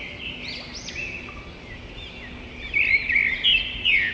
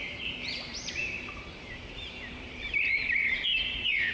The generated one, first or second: second